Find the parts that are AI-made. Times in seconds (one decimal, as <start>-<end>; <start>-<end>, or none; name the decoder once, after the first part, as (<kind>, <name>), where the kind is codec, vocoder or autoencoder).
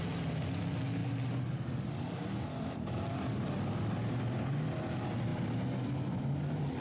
none